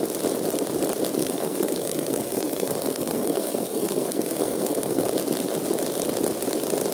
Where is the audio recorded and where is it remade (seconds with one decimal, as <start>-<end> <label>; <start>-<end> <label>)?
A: 0.0-1.2 recorded; 1.2-5.1 remade; 5.1-6.9 recorded